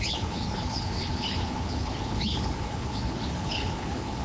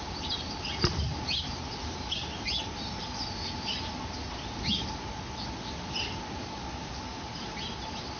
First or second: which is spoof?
first